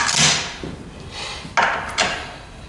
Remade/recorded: recorded